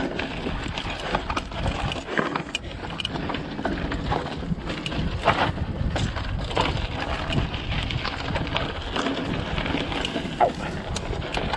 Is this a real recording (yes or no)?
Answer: yes